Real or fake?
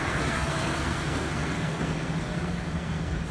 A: fake